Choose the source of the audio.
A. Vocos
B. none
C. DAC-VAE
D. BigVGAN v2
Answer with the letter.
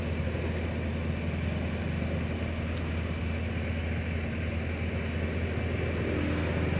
B